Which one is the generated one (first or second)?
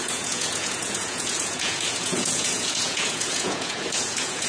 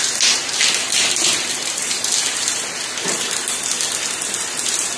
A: first